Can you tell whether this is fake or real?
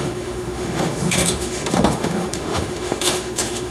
fake